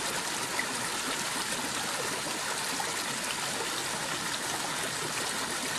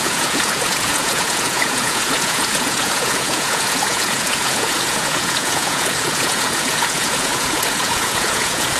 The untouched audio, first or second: first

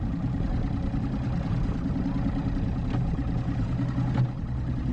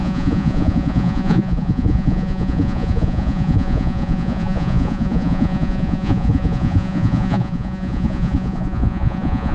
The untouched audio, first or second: first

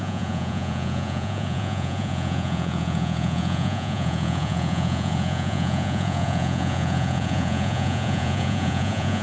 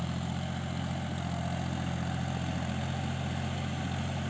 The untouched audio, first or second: second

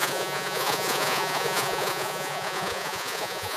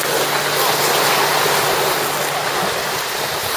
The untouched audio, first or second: second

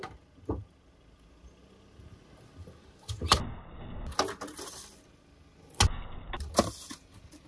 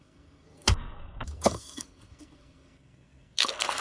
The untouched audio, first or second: first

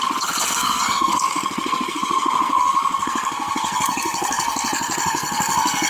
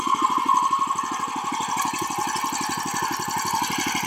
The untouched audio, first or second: second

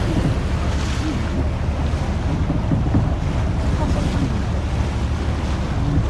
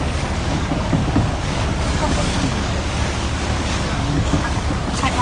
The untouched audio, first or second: first